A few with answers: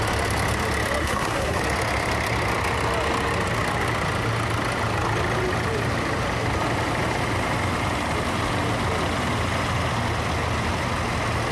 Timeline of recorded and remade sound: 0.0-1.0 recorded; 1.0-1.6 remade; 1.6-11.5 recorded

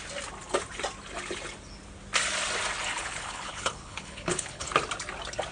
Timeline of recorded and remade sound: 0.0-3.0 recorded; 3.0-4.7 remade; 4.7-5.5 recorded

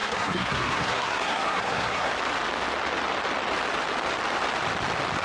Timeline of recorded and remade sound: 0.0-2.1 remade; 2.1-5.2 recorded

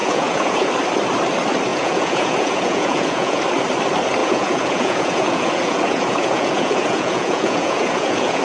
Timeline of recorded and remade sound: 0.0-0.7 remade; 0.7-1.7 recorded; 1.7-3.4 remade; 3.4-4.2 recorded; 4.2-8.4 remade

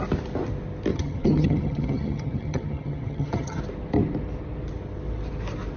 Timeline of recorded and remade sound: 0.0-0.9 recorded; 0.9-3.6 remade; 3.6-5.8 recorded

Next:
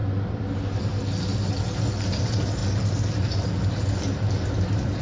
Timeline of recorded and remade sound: 0.0-5.0 recorded

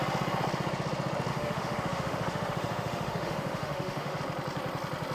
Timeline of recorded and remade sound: 0.0-1.3 recorded; 1.3-4.2 remade; 4.2-5.1 recorded